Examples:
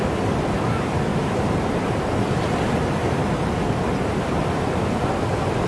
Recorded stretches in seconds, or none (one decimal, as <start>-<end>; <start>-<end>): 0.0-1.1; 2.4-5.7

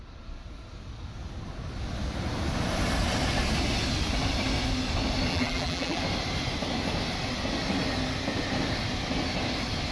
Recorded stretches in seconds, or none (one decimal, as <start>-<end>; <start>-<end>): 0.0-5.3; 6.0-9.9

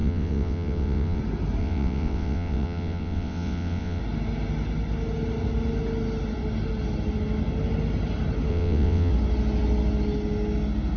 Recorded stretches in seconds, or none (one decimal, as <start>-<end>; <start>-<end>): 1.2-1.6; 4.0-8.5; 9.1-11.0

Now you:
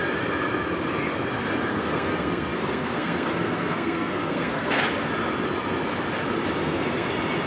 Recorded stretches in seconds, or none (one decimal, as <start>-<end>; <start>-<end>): 0.0-1.7; 4.8-6.6; 7.1-7.5

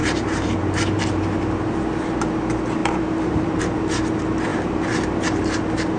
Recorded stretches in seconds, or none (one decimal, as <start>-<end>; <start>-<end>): 1.4-2.8; 3.6-4.5; 5.4-6.0